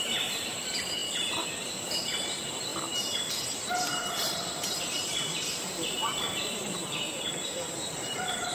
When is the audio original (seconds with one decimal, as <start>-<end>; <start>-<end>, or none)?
1.0-1.8; 2.7-3.3